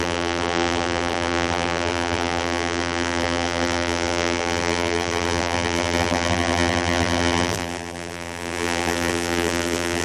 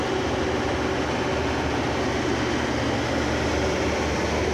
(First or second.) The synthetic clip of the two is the first